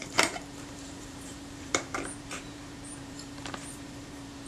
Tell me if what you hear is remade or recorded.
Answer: remade